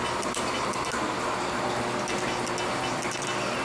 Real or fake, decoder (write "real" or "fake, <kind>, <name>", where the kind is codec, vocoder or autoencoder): real